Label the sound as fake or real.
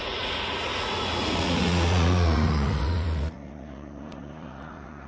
fake